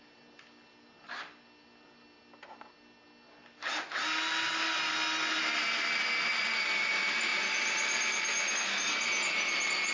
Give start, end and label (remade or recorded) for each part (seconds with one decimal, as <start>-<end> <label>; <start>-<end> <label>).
0.0-7.3 recorded; 7.3-8.5 remade; 8.5-9.9 recorded